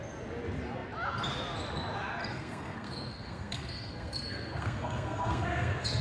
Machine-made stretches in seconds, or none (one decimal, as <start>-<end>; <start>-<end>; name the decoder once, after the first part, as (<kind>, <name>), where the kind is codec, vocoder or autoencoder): 2.2-6.0 (codec, SNAC)